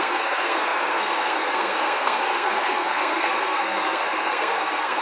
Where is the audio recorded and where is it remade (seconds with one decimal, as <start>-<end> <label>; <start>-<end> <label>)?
0.0-5.0 remade

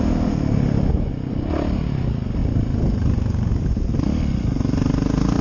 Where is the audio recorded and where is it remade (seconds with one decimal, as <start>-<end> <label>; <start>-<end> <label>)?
0.0-5.4 recorded

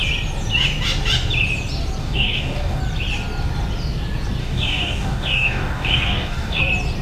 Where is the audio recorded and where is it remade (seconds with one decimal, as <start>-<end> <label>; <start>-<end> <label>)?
0.0-2.0 recorded; 2.0-2.8 remade; 2.8-4.4 recorded; 4.4-6.6 remade; 6.6-7.0 recorded

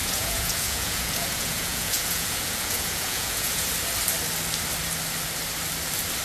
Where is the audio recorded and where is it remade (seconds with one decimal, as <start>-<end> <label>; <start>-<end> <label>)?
0.0-3.7 remade; 3.7-6.2 recorded

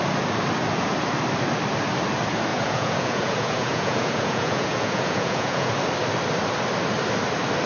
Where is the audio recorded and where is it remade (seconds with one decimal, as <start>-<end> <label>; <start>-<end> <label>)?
0.0-2.5 recorded; 2.5-5.8 remade; 5.8-7.7 recorded

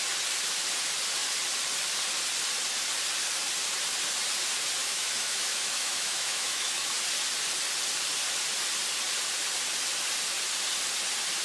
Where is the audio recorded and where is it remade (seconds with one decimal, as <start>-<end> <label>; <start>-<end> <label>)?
0.0-4.8 recorded; 4.8-6.9 remade; 6.9-11.4 recorded